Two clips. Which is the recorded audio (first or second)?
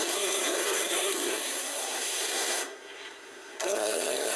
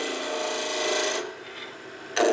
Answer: second